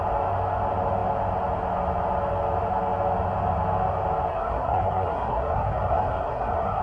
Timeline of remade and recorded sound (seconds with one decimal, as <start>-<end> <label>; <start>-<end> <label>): 0.0-4.3 recorded; 4.3-6.8 remade